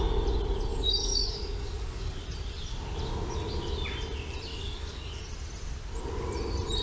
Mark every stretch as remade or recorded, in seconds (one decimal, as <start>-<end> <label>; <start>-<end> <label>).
0.0-0.7 recorded; 0.7-2.2 remade; 2.2-4.5 recorded; 4.5-5.2 remade; 5.2-6.8 recorded